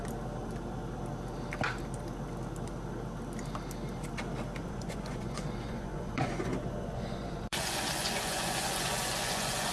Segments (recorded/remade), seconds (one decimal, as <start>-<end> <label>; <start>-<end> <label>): 0.0-4.6 recorded; 4.6-9.7 remade